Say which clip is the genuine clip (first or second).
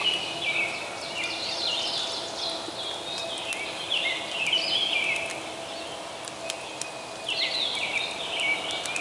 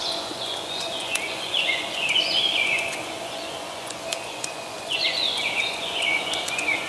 first